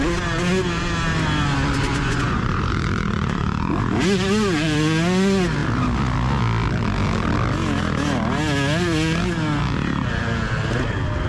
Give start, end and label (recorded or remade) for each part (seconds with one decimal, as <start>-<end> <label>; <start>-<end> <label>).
0.0-1.9 recorded; 1.9-3.7 remade; 3.7-11.3 recorded